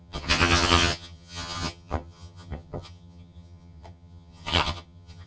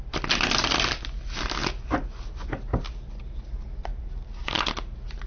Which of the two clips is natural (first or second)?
second